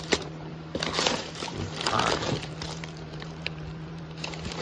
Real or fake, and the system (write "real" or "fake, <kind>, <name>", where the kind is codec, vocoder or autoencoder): fake, vocoder, BigVGAN v2